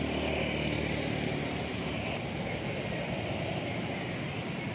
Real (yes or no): yes